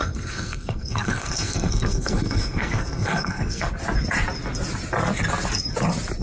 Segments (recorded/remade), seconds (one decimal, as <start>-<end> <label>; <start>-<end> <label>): 0.0-3.7 remade; 3.7-6.2 recorded